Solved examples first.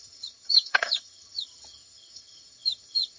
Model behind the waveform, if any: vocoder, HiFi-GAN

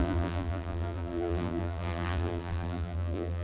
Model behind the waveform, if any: vocoder, BigVGAN v2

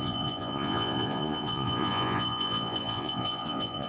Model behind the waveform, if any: vocoder, Vocos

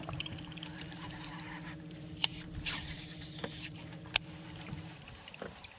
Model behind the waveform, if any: vocoder, BigVGAN v2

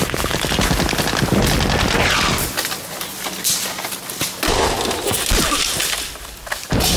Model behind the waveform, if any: none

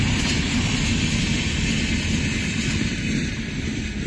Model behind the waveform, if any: none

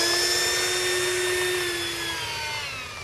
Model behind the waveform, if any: none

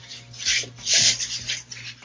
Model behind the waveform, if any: none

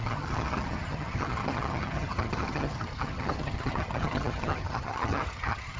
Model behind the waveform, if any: vocoder, HiFi-GAN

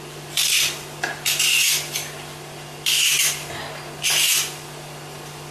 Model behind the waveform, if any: none